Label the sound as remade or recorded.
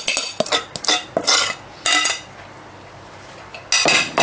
recorded